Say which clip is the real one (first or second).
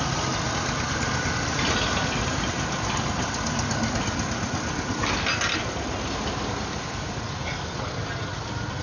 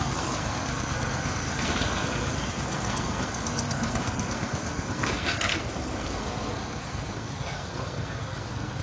first